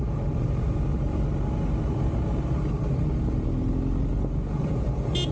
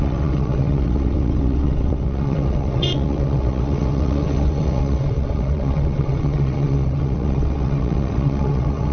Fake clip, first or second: second